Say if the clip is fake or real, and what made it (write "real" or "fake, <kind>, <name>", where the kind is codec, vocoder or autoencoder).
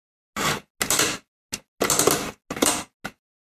real